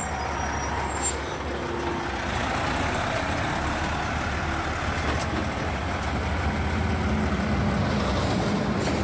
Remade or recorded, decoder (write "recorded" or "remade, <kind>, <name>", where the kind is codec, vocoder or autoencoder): recorded